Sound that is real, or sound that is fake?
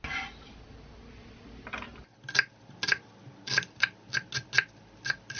real